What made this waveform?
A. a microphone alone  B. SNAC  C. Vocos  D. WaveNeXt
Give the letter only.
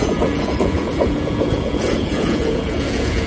C